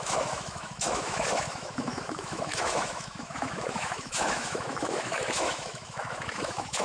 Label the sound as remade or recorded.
remade